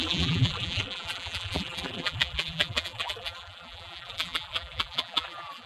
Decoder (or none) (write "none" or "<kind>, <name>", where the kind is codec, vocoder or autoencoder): vocoder, BigVGAN v2